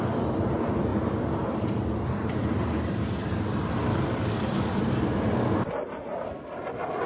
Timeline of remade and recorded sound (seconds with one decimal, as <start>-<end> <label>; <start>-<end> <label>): 0.0-3.9 recorded; 3.9-4.8 remade; 4.8-7.1 recorded